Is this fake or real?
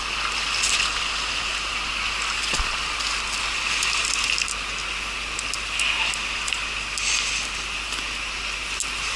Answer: real